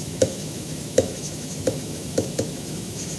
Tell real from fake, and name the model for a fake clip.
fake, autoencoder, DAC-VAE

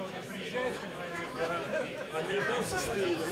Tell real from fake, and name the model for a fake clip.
fake, autoencoder, DAC-VAE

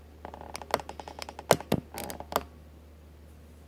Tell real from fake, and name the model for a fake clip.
real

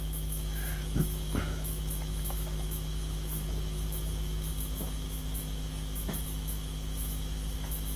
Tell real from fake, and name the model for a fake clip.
fake, autoencoder, DAC-VAE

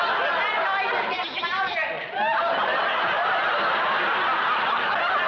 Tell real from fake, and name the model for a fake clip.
real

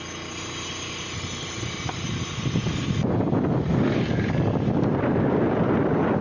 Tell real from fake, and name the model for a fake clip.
real